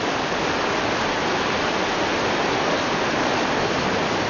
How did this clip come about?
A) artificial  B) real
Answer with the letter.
B